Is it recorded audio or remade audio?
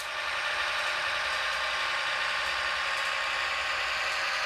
recorded